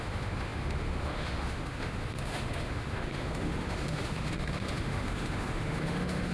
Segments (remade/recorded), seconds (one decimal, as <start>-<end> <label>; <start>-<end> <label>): 0.0-6.3 remade

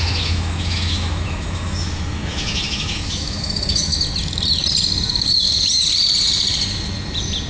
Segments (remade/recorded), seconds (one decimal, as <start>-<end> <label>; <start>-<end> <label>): 0.0-3.9 remade; 3.9-7.5 recorded

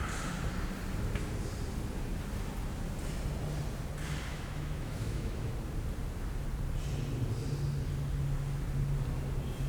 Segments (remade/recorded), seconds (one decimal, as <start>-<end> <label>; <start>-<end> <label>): 0.0-4.3 recorded; 4.3-5.5 remade; 5.5-9.7 recorded

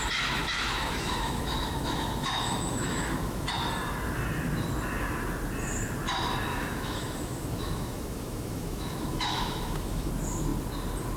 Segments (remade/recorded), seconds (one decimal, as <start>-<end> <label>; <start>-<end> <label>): 0.0-0.4 recorded; 0.4-3.5 remade; 3.5-6.5 recorded; 6.5-10.1 remade; 10.1-11.2 recorded

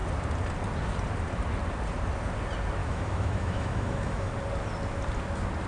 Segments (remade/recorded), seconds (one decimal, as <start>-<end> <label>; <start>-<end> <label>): 0.0-2.8 recorded; 2.8-4.3 remade; 4.3-5.7 recorded

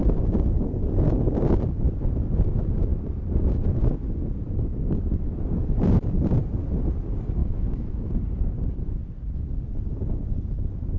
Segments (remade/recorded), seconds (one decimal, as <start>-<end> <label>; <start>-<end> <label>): 0.0-7.4 recorded; 7.4-8.1 remade; 8.1-11.0 recorded

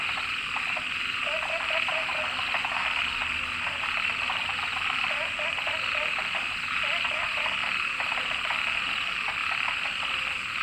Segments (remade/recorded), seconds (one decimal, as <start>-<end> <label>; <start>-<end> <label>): 0.0-10.6 recorded

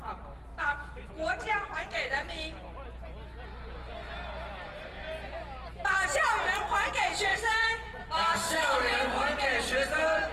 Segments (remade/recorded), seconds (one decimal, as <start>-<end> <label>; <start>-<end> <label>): 0.0-0.5 recorded; 0.5-1.1 remade; 1.1-7.3 recorded; 7.3-9.0 remade; 9.0-10.3 recorded